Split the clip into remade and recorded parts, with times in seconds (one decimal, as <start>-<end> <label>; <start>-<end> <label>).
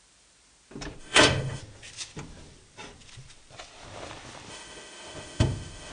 0.0-1.0 recorded; 1.0-1.6 remade; 1.6-4.5 recorded; 4.5-5.9 remade